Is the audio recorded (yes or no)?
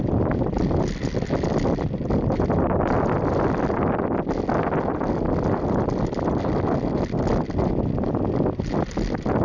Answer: yes